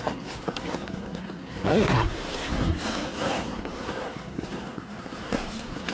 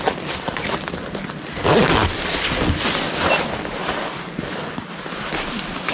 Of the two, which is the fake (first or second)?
first